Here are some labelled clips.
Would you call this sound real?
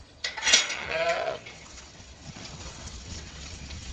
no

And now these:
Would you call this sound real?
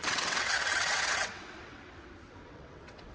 no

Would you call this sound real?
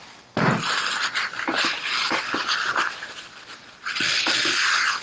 yes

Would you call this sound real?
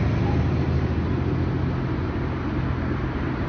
yes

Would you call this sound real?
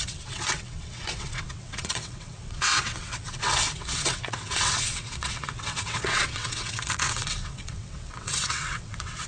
no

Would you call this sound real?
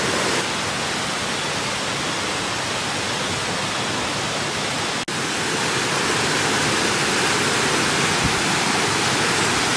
yes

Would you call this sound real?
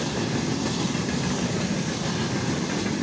yes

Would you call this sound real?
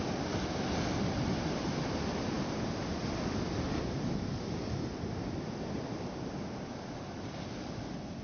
yes